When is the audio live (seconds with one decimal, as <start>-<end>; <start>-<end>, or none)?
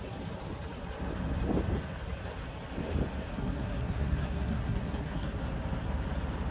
0.0-3.3; 5.4-6.5